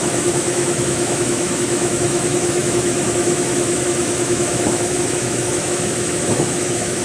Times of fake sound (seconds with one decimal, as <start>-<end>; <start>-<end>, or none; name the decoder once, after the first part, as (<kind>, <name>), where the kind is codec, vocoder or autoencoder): 0.0-7.0 (autoencoder, DAC-VAE)

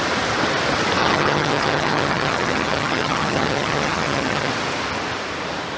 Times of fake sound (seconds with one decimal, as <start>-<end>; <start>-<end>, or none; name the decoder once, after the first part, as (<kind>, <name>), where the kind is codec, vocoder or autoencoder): 1.0-4.5 (vocoder, HiFi-GAN)

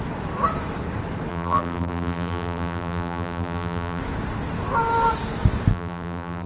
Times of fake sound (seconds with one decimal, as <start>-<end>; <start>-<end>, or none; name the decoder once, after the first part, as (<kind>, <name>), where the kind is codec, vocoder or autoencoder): 1.3-4.0 (vocoder, BigVGAN v2); 5.7-6.5

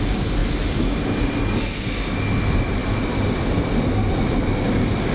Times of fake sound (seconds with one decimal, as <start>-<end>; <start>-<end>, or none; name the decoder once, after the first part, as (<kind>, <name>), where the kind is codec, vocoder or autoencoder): none

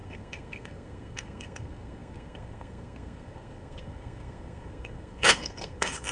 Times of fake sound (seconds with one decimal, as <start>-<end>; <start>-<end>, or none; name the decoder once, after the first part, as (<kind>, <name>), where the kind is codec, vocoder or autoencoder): 0.0-6.1 (codec, SNAC)

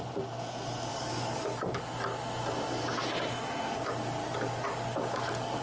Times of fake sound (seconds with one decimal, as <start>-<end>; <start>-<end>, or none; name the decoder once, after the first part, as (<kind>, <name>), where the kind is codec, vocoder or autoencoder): 0.9-1.8 (codec, DAC); 4.2-5.6

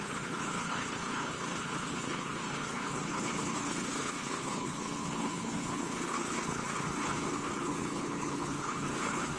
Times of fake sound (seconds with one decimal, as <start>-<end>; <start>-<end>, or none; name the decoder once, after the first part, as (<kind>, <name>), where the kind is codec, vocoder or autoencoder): 0.0-9.4 (codec, HILCodec)

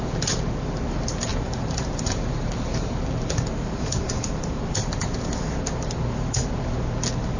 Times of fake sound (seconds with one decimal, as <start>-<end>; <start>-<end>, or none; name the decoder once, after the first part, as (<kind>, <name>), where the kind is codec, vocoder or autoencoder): 1.3-5.3 (vocoder, BigVGAN v2)